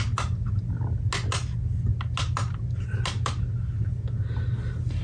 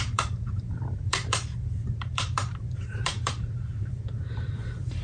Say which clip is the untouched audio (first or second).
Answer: first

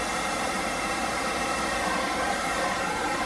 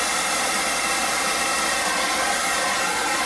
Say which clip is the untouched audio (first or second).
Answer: second